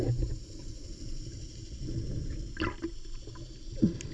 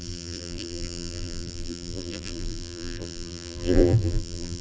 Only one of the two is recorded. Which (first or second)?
first